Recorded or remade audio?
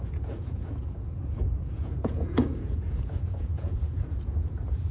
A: remade